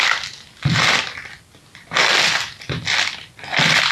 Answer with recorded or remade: recorded